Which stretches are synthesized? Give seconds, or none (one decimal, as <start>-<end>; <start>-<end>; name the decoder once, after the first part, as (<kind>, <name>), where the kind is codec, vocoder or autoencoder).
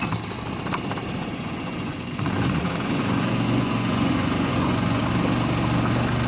1.2-5.0 (vocoder, Vocos)